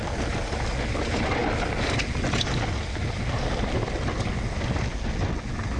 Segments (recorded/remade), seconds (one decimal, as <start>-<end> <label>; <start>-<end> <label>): 0.0-5.8 recorded